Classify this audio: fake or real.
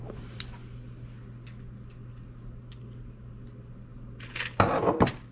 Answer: real